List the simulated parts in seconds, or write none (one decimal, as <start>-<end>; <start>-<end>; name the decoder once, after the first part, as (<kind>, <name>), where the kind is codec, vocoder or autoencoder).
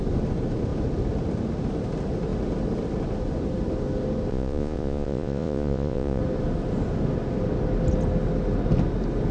4.3-6.2 (vocoder, Vocos)